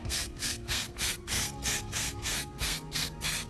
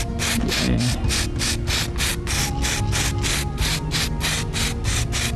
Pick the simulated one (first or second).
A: first